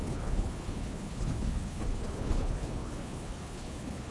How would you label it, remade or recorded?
remade